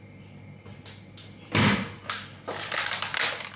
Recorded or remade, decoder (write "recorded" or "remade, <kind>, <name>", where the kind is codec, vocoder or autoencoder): recorded